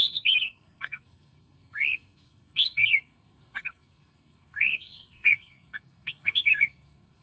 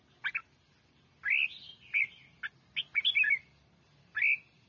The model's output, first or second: first